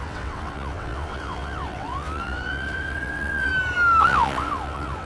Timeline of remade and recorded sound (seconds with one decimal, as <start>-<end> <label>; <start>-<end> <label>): 0.0-3.5 remade; 3.5-4.0 recorded; 4.0-5.0 remade